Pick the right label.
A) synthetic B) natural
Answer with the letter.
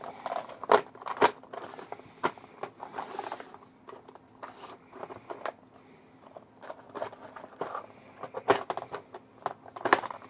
B